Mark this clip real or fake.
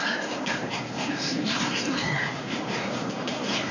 fake